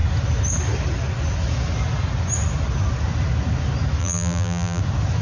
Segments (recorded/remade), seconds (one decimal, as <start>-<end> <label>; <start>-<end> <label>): 0.0-4.0 recorded; 4.0-4.8 remade; 4.8-5.2 recorded